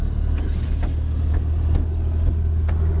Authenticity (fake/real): real